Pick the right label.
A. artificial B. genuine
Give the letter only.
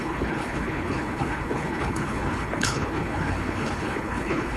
A